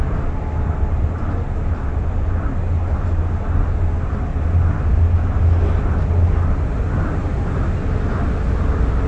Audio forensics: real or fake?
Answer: real